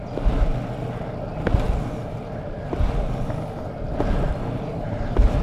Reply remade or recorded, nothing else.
recorded